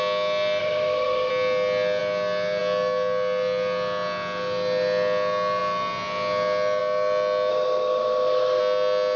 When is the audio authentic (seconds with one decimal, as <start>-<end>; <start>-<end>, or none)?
0.0-0.6; 1.3-7.5; 8.6-9.2